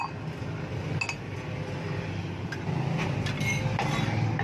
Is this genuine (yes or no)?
yes